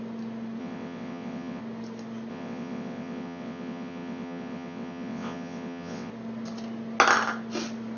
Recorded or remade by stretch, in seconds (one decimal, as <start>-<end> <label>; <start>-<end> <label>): 0.0-0.6 recorded; 0.6-1.6 remade; 1.6-2.3 recorded; 2.3-6.1 remade; 6.1-8.0 recorded